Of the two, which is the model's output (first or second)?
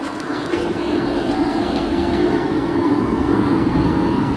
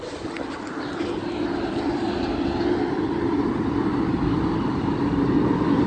first